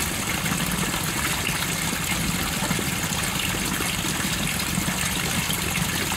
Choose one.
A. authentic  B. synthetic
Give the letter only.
A